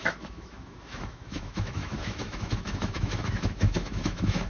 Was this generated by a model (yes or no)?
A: yes